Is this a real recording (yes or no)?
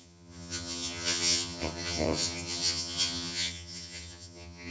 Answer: no